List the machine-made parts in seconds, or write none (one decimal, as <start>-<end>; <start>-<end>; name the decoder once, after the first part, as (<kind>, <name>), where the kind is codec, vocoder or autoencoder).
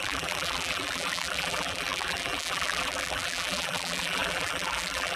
0.0-5.2 (vocoder, BigVGAN v2)